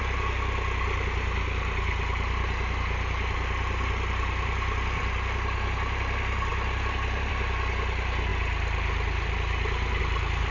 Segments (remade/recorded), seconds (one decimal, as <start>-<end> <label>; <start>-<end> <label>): 0.0-10.5 recorded